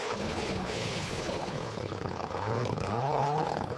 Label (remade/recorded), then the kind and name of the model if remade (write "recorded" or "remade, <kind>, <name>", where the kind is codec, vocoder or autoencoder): remade, codec, HILCodec